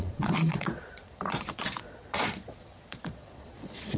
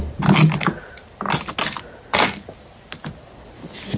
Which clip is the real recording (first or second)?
second